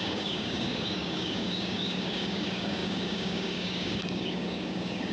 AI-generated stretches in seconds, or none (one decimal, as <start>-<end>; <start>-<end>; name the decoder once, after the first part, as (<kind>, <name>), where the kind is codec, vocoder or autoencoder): 0.0-5.1 (codec, DAC)